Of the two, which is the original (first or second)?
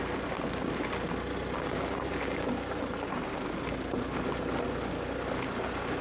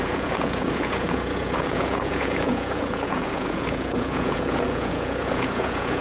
first